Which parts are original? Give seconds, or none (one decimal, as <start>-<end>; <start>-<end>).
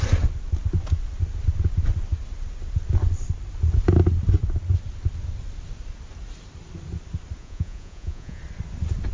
0.0-7.4; 8.4-9.1